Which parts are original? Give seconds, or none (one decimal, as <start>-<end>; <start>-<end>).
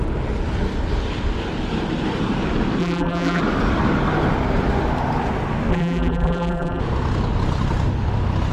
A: 0.0-2.8; 3.4-5.7; 6.8-8.5